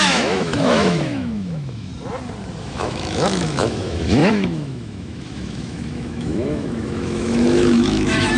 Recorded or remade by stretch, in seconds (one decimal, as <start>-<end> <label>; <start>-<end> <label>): 0.0-1.9 remade; 1.9-2.6 recorded; 2.6-8.4 remade